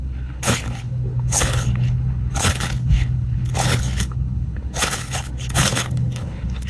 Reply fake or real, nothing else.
fake